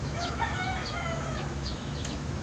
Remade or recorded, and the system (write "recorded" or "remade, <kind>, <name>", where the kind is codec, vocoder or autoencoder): remade, autoencoder, DAC-VAE